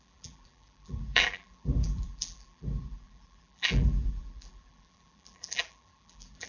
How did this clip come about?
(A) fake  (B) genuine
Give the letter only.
A